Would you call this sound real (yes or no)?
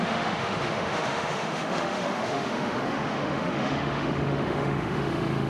no